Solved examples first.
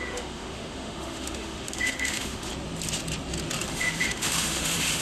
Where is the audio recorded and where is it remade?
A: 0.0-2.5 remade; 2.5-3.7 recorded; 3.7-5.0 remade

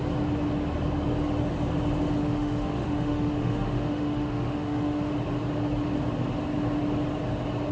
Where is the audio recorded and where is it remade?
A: 0.0-2.2 recorded; 2.2-5.1 remade; 5.1-7.7 recorded

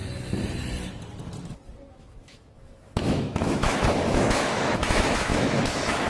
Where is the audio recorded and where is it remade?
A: 0.0-1.9 recorded; 1.9-6.1 remade

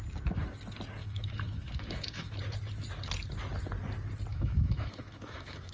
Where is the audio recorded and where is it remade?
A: 0.0-1.0 recorded; 1.0-2.4 remade; 2.4-4.3 recorded; 4.3-5.7 remade